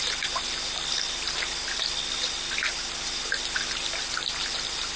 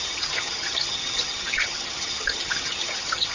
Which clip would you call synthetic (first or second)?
second